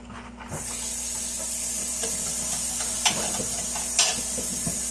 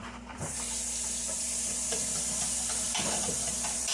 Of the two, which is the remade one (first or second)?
second